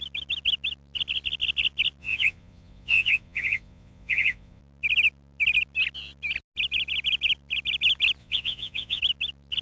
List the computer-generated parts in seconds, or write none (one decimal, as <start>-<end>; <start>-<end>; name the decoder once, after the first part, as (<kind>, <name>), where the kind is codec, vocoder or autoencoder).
2.0-4.6 (vocoder, Vocos); 8.2-9.0